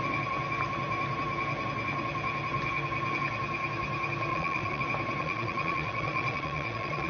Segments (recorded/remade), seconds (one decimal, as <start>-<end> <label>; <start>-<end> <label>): 0.0-4.3 recorded; 4.3-4.8 remade; 4.8-5.2 recorded; 5.2-7.1 remade